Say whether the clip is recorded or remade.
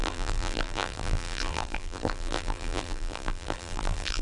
remade